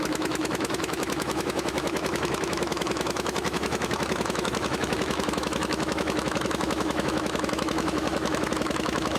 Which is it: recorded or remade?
remade